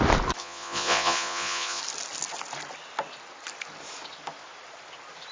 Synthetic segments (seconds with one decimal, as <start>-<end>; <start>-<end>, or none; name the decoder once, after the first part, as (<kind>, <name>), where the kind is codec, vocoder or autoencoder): 0.4-1.8 (vocoder, Vocos)